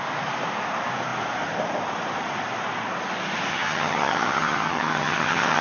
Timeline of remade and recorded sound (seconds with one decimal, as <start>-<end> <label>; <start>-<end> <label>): 0.0-3.5 recorded; 3.5-5.6 remade